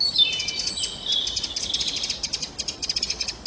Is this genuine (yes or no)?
yes